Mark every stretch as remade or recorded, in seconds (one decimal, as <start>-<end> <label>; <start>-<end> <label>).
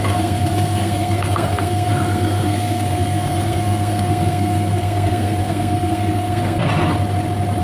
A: 0.0-6.7 remade; 6.7-7.6 recorded